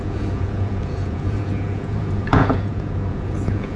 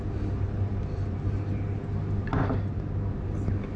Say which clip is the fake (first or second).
first